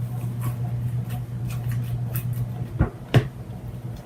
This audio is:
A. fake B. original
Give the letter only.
B